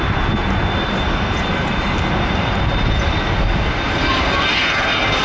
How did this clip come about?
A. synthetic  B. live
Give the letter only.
B